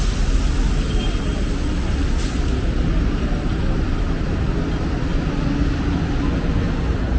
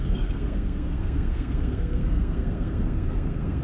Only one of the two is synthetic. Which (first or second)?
second